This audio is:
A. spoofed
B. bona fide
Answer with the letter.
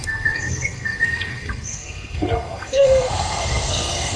A